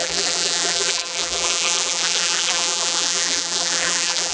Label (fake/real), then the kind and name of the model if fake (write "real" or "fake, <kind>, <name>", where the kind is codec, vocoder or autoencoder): fake, vocoder, BigVGAN v2